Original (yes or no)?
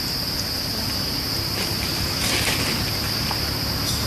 yes